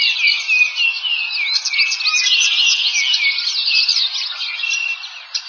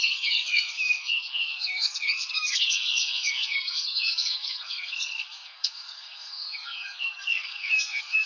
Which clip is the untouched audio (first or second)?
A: first